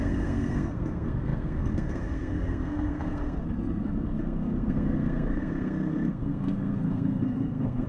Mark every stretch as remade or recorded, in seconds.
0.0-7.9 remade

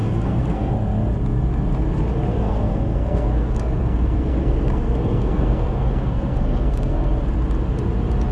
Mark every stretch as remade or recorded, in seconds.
0.0-0.7 remade; 0.7-2.3 recorded; 2.3-7.1 remade; 7.1-8.3 recorded

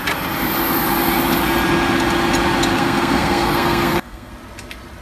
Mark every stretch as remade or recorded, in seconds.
0.0-2.7 recorded; 2.7-4.3 remade; 4.3-5.0 recorded